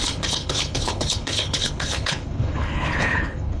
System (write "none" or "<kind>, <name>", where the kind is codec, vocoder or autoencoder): codec, HILCodec